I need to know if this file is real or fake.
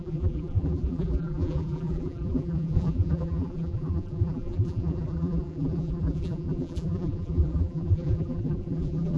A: fake